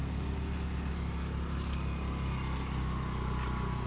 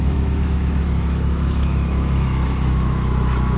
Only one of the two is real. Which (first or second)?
first